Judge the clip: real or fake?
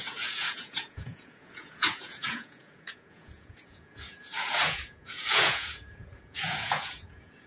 fake